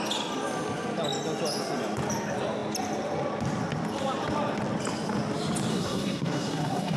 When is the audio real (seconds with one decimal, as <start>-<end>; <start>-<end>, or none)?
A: 0.0-5.7